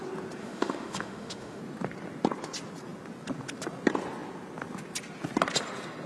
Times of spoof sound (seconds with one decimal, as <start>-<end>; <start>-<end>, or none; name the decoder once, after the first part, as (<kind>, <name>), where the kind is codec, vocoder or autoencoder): 0.4-1.6 (autoencoder, DAC-VAE)